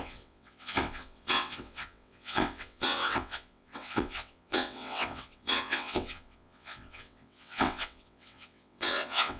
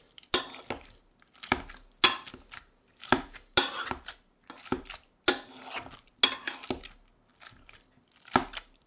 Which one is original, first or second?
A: second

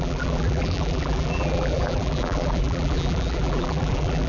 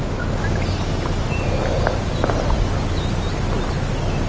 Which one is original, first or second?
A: second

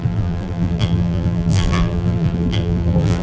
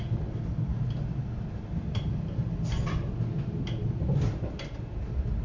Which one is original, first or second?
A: second